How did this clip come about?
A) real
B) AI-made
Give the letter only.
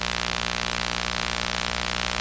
A